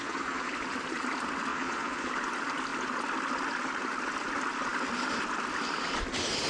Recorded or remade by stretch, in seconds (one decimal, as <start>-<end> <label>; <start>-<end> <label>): 0.0-0.5 remade; 0.5-1.5 recorded; 1.5-2.1 remade; 2.1-6.5 recorded